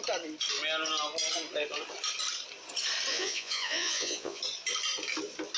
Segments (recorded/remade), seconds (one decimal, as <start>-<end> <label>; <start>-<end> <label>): 0.0-3.1 recorded; 3.1-4.4 remade; 4.4-5.6 recorded